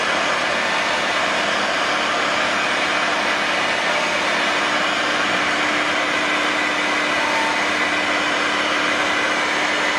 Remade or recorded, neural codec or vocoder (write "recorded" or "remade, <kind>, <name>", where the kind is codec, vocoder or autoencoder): recorded